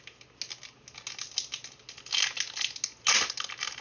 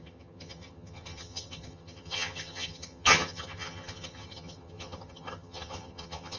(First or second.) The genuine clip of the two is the first